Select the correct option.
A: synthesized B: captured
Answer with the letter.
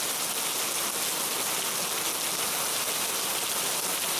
B